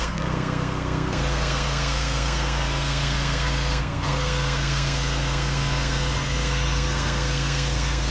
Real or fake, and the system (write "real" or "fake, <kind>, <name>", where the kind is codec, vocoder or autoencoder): fake, codec, SNAC